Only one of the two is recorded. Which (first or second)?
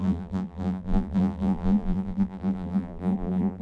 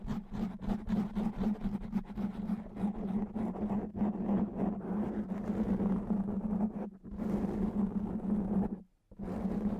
second